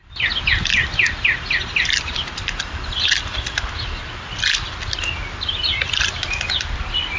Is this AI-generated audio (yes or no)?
no